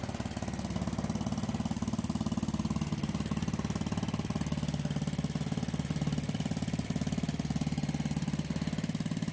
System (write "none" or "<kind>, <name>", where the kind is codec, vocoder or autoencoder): none